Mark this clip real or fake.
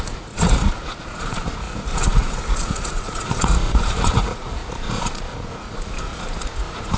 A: fake